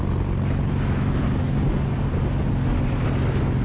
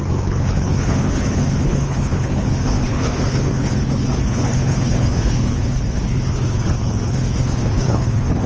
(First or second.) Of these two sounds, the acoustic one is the first